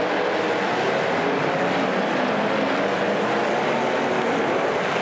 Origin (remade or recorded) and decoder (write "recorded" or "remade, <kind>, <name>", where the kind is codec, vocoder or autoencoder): recorded